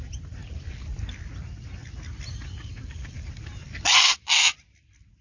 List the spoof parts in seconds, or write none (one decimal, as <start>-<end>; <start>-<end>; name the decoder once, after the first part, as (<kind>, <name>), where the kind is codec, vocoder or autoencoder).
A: none